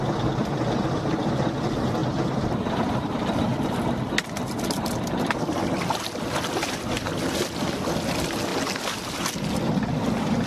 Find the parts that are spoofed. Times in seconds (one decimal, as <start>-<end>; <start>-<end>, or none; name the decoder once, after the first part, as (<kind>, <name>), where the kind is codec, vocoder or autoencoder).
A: 2.0-6.4 (vocoder, BigVGAN v2)